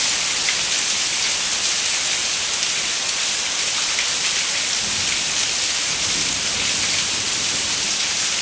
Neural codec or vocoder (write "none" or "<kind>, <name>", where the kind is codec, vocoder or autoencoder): none